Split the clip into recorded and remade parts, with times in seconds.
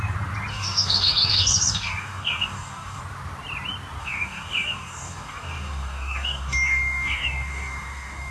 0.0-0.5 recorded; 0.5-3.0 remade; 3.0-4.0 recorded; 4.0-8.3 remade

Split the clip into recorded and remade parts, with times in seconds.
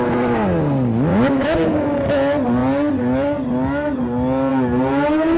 0.0-1.1 recorded; 1.1-2.0 remade; 2.0-5.4 recorded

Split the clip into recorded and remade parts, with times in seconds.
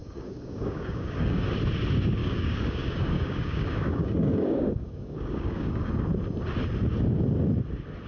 0.0-1.5 remade; 1.5-2.2 recorded; 2.2-5.9 remade; 5.9-8.1 recorded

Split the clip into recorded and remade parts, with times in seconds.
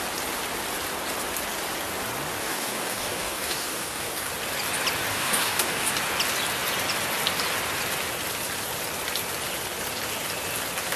0.0-2.4 recorded; 2.4-4.3 remade; 4.3-5.1 recorded; 5.1-5.9 remade; 5.9-11.0 recorded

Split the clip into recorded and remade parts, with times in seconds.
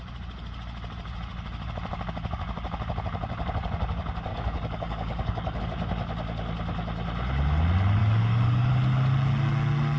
0.0-4.3 recorded; 4.3-5.6 remade; 5.6-8.0 recorded; 8.0-8.7 remade; 8.7-10.0 recorded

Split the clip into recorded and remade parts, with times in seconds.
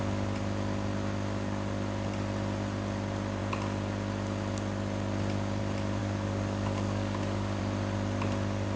0.0-6.0 recorded; 6.0-7.6 remade; 7.6-8.8 recorded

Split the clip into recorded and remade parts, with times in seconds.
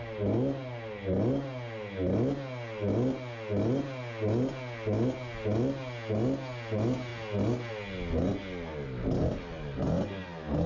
0.0-10.7 recorded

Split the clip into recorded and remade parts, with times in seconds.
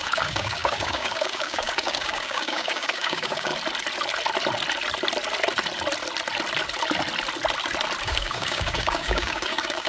0.0-3.5 remade; 3.5-8.0 recorded; 8.0-9.9 remade